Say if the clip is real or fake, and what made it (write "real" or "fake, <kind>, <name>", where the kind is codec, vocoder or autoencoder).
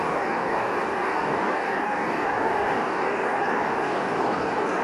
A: fake, codec, DAC